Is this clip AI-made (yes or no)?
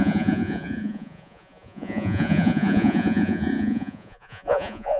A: yes